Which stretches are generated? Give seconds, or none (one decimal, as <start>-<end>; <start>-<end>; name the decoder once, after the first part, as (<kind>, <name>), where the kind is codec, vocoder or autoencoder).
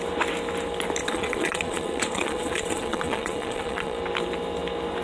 1.0-4.0 (vocoder, Vocos)